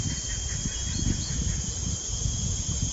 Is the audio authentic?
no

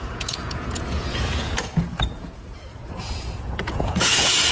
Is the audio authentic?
no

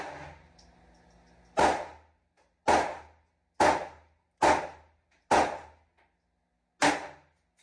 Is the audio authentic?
yes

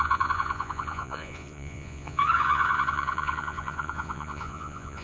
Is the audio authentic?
no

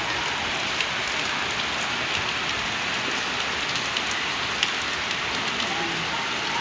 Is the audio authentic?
yes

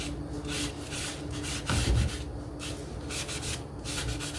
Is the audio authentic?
yes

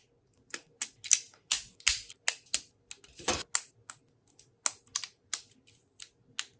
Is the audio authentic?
yes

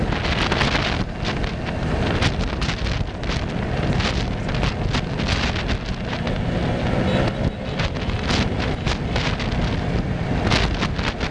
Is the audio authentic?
yes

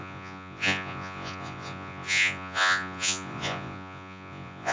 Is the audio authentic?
no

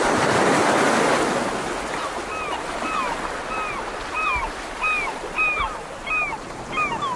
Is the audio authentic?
yes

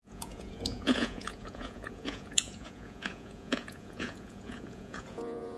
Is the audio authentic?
no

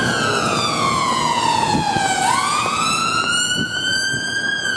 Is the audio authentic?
no